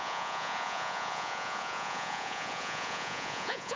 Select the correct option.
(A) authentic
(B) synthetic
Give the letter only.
B